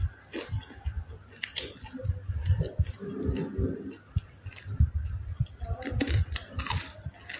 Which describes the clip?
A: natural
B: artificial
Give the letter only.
A